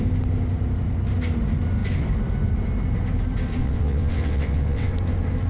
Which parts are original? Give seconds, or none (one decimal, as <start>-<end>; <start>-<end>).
0.0-3.6; 4.9-5.5